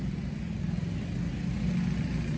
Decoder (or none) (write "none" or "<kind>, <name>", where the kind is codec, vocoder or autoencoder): none